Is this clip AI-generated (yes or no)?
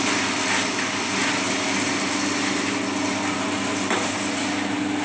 no